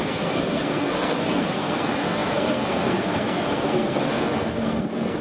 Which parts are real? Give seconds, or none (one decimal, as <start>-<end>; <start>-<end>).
none